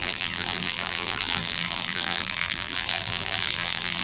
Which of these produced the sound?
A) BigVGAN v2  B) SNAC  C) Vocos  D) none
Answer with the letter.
A